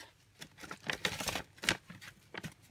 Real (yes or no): yes